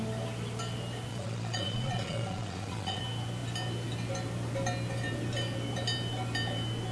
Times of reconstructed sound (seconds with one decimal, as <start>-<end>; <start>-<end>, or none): 1.1-3.0